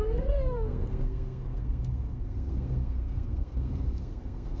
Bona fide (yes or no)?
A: no